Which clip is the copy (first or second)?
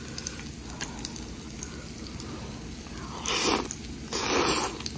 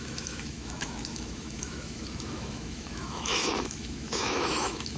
second